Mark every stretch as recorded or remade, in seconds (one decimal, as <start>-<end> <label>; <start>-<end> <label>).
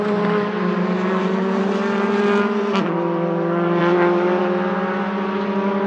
0.0-1.1 recorded; 1.1-3.8 remade; 3.8-5.9 recorded